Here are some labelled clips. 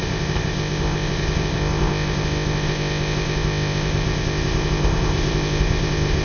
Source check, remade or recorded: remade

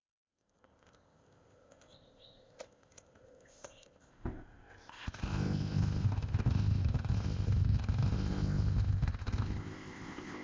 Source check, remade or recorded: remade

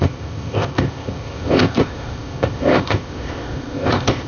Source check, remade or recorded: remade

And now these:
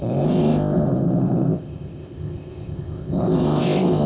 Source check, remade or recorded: remade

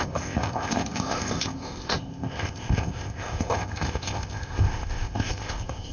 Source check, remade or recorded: remade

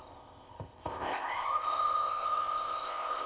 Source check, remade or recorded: remade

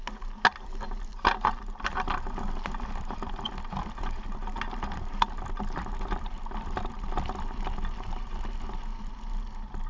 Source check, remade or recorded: recorded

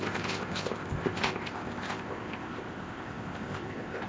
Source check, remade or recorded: remade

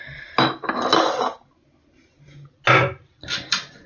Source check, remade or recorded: recorded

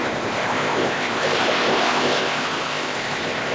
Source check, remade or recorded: remade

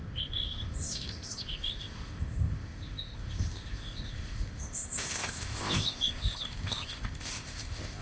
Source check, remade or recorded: remade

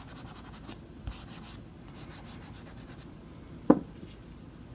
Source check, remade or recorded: recorded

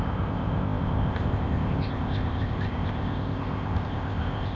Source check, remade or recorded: remade